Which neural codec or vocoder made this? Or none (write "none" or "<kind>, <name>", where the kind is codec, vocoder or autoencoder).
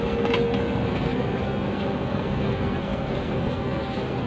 codec, SNAC